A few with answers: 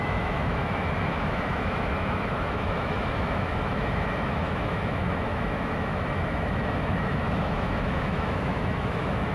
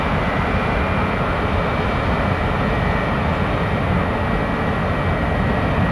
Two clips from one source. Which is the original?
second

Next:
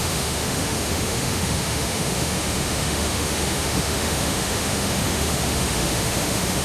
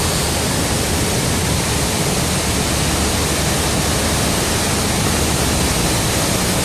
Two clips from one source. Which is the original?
second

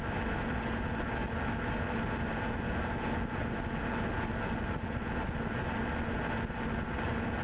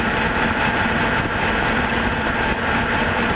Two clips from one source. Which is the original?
first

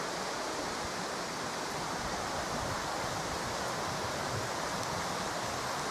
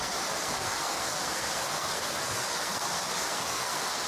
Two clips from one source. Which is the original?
first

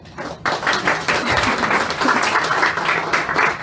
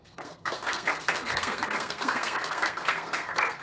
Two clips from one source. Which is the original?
first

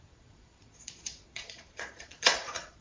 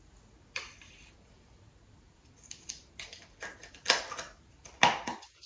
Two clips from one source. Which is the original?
second